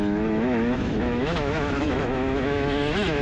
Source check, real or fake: fake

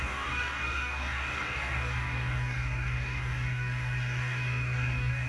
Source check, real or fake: fake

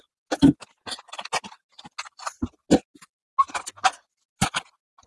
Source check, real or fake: real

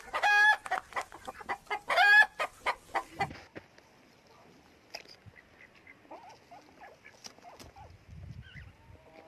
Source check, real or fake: real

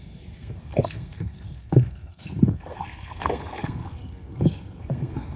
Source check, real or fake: fake